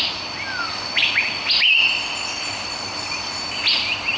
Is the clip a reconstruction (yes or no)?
no